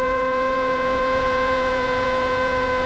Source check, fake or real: fake